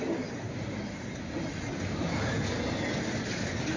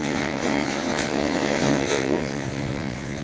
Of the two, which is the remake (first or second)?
second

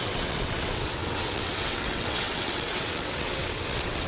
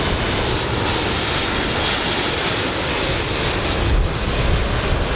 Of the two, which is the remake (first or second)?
first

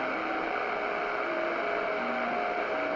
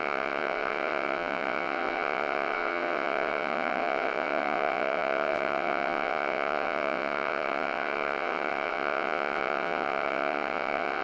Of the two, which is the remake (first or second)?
second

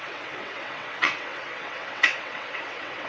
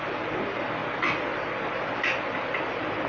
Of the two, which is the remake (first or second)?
first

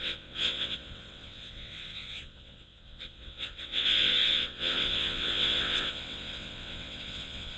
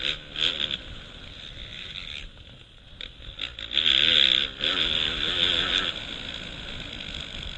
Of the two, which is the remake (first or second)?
first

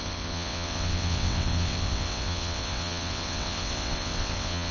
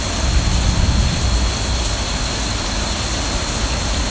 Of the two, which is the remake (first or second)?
first